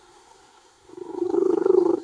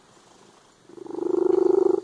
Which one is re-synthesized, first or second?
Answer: first